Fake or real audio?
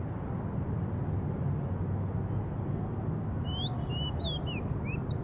real